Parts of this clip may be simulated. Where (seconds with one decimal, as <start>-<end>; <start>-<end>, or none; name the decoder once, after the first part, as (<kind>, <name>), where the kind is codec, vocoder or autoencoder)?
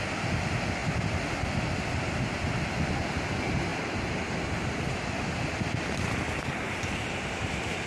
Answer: none